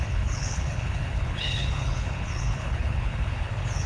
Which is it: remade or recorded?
remade